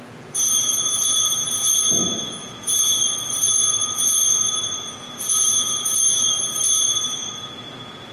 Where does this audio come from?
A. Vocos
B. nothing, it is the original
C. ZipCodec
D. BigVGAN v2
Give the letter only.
A